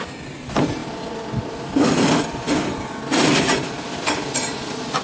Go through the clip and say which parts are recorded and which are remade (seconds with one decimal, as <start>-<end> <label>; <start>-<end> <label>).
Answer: 0.0-5.0 recorded